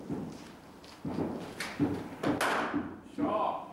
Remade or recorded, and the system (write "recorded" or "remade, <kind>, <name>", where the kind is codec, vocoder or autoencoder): recorded